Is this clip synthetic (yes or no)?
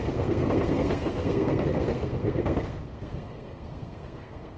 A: yes